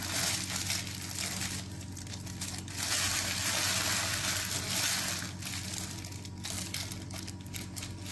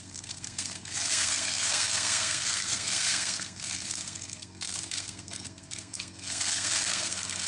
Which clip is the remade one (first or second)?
second